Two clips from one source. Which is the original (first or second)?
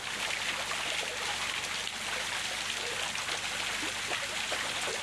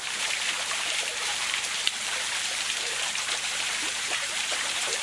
first